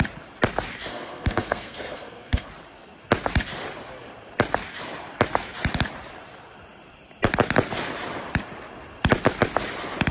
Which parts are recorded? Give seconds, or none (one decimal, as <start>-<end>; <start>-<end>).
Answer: 0.0-0.9; 2.5-10.1